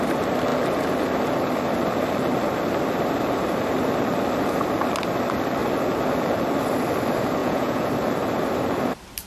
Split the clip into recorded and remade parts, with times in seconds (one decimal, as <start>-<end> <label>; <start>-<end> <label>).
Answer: 0.0-7.4 recorded; 7.4-7.9 remade; 7.9-9.3 recorded